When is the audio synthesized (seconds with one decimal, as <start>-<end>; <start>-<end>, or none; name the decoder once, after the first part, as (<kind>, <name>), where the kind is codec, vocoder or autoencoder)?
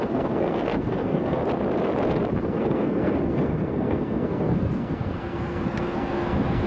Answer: 0.0-1.4 (codec, SNAC); 2.4-6.7